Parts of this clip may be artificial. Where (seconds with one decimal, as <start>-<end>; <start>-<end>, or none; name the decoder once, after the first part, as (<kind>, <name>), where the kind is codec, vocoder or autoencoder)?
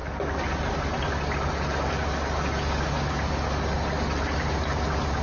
none